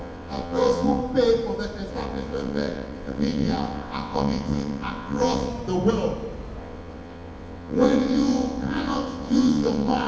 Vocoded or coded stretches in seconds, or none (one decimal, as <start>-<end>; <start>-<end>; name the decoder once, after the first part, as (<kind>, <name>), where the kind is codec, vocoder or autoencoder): 0.0-1.0 (vocoder, WaveNeXt); 1.9-5.5; 6.6-10.1